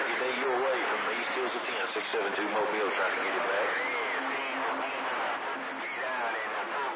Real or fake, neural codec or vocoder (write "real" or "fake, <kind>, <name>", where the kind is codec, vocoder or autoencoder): real